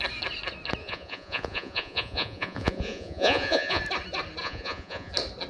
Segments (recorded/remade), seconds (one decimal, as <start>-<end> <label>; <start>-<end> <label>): 0.0-0.8 recorded; 0.8-3.8 remade; 3.8-4.4 recorded; 4.4-5.1 remade; 5.1-5.5 recorded